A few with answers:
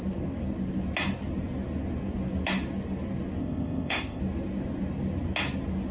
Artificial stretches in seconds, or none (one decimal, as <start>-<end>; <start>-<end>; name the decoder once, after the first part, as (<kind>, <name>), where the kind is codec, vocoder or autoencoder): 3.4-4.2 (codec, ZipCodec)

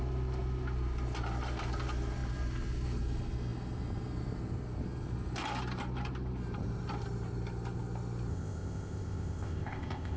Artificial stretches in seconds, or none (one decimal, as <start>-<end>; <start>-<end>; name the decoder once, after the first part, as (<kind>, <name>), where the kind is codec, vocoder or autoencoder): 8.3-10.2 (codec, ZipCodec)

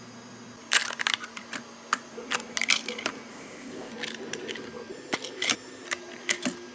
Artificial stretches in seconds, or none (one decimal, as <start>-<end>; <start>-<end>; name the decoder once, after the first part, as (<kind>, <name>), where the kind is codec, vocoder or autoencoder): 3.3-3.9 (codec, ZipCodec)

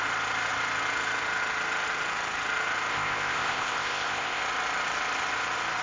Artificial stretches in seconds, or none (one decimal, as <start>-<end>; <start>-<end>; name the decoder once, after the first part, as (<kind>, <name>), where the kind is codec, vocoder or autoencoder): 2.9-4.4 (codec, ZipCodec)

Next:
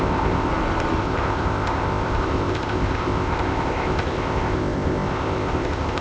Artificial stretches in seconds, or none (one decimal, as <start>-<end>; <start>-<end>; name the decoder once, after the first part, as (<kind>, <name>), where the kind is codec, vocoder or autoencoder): 0.0-0.5 (codec, ZipCodec); 1.0-6.0

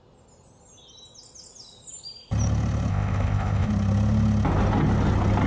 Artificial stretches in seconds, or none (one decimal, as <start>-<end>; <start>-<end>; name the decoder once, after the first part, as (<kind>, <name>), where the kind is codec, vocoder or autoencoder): 2.9-3.7 (codec, ZipCodec)

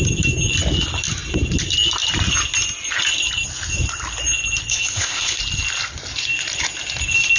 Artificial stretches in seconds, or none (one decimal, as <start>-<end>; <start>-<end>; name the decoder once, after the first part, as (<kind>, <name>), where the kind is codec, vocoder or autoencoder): 4.7-5.4 (codec, ZipCodec)

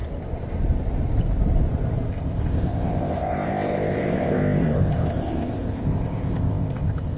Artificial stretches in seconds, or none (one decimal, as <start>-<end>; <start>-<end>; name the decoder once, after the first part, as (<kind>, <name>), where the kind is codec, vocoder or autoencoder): 2.1-7.2 (codec, ZipCodec)